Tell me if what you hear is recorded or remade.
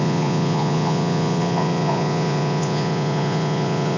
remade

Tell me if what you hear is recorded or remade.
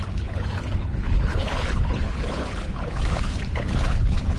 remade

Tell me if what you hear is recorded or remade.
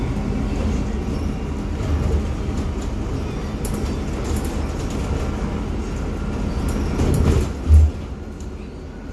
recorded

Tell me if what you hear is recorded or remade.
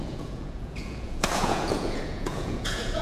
remade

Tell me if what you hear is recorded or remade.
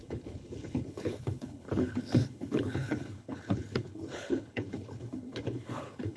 remade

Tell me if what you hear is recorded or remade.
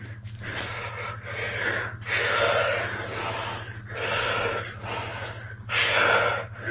recorded